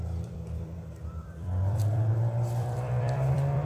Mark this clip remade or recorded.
remade